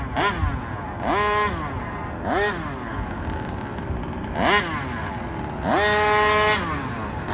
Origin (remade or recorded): recorded